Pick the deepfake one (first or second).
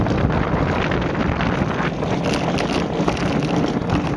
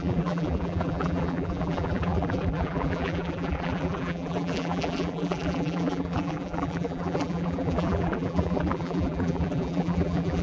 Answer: second